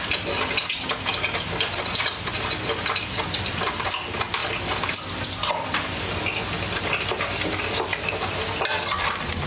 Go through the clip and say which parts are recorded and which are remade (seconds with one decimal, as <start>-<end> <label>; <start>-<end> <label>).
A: 0.0-9.5 recorded